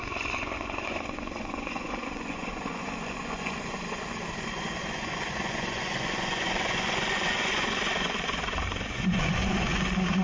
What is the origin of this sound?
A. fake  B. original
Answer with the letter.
A